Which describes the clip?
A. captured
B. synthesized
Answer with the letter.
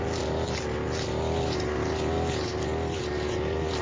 A